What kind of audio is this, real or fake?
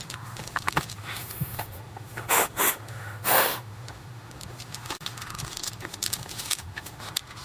fake